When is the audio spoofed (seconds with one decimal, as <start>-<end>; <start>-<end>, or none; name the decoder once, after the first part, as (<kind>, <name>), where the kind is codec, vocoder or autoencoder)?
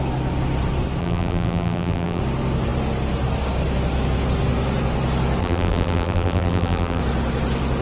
1.0-2.2 (vocoder, BigVGAN v2); 5.4-7.0